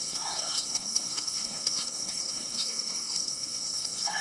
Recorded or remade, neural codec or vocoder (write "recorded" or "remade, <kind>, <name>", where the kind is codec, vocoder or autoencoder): remade, codec, SNAC